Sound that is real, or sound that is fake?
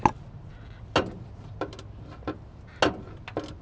real